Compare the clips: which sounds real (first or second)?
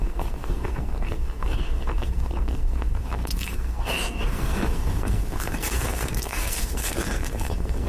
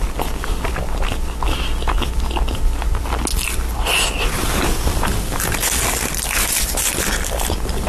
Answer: second